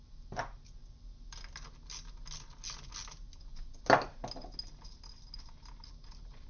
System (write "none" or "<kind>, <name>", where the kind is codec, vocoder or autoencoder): none